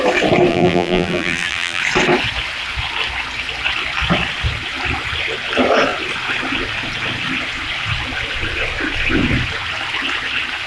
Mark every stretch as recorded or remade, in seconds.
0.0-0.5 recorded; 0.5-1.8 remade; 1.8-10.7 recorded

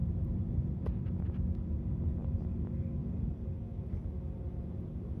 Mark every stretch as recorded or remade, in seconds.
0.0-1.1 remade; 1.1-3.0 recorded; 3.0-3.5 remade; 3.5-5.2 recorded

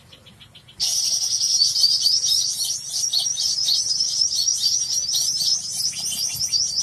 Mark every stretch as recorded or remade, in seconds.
0.0-0.9 remade; 0.9-3.1 recorded; 3.1-4.5 remade; 4.5-6.8 recorded

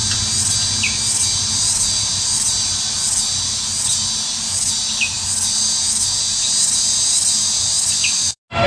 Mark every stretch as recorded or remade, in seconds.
0.0-8.7 recorded